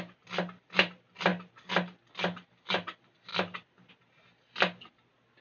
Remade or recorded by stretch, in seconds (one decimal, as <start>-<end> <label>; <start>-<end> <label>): 0.0-5.4 recorded